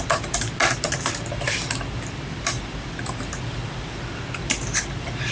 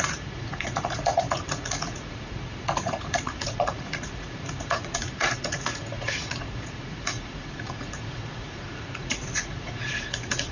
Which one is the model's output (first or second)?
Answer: second